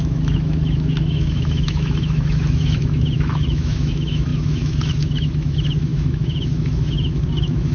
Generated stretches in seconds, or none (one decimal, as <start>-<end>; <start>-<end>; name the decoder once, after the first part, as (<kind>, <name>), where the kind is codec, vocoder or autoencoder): 0.0-7.7 (autoencoder, DAC-VAE)